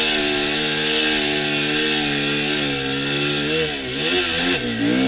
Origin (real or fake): real